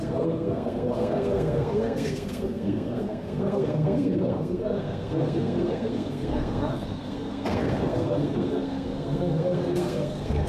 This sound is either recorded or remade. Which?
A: remade